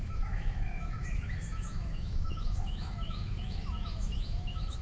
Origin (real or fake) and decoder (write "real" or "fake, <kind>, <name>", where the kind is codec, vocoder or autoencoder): fake, autoencoder, DAC-VAE